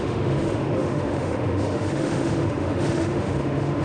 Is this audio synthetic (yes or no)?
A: yes